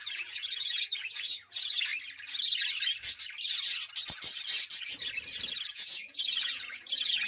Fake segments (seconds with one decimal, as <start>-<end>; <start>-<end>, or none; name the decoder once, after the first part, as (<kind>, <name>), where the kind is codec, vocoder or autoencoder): 0.0-1.9 (vocoder, Vocos); 5.7-7.3